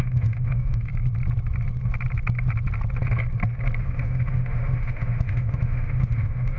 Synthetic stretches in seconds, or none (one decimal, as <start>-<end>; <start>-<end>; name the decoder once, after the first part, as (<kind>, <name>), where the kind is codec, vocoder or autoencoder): 0.0-0.9 (autoencoder, DAC-VAE); 3.8-6.6